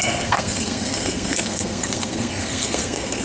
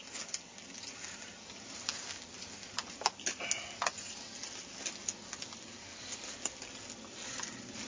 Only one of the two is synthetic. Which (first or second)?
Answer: first